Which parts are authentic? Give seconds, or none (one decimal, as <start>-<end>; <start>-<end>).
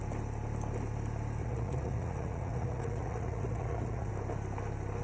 0.0-1.4; 4.1-5.0